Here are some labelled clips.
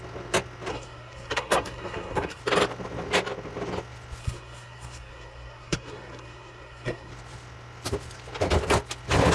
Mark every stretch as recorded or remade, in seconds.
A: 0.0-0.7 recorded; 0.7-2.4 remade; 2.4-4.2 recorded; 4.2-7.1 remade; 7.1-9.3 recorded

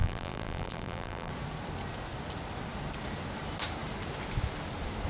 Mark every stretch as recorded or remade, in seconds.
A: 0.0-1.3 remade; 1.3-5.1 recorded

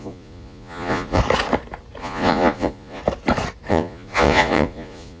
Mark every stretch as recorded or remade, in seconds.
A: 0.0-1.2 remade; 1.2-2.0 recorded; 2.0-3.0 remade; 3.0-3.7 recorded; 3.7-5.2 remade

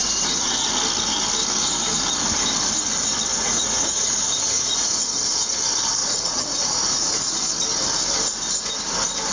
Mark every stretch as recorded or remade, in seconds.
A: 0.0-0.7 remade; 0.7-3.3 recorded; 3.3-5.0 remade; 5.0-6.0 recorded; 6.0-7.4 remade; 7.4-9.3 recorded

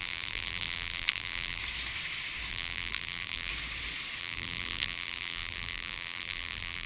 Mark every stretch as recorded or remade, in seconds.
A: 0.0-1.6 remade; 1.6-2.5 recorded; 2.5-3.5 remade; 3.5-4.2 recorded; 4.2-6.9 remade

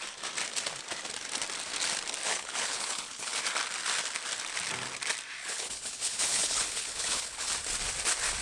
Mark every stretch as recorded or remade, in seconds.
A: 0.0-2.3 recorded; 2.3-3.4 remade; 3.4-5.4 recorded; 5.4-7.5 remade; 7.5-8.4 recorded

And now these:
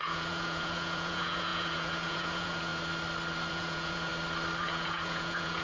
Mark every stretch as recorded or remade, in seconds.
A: 0.0-2.7 remade; 2.7-3.5 recorded; 3.5-4.1 remade; 4.1-4.6 recorded; 4.6-5.6 remade

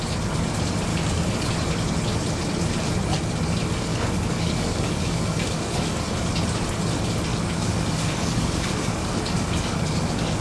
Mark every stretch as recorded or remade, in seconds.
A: 0.0-0.9 recorded; 0.9-1.5 remade; 1.5-3.9 recorded; 3.9-6.1 remade; 6.1-7.3 recorded; 7.3-10.4 remade